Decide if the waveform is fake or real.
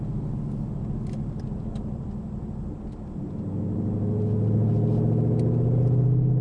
real